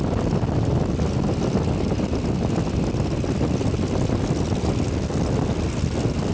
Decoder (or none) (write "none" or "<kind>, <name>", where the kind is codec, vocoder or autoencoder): none